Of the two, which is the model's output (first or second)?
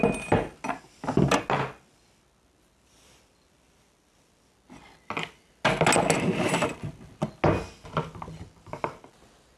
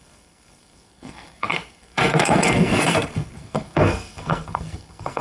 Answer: second